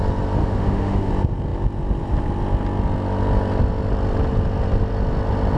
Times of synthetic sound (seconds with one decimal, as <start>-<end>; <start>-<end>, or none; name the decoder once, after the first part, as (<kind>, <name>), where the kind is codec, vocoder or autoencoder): 0.4-1.1 (autoencoder, DAC-VAE)